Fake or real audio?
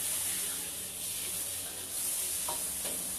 real